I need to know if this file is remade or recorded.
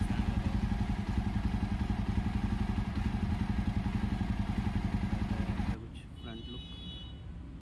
recorded